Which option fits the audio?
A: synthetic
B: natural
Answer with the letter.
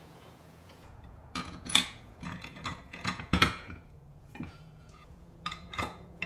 A